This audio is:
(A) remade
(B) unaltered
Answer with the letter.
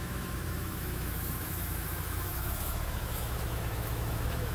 A